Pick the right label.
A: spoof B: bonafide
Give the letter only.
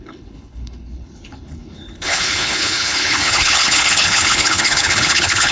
A